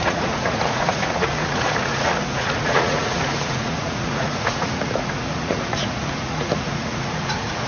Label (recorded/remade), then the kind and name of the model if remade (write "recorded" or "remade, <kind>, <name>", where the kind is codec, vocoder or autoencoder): remade, vocoder, Vocos